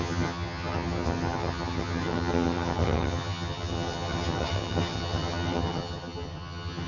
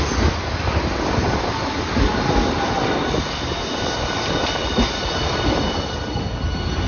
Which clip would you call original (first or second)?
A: second